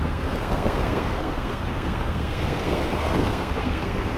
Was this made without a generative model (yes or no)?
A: no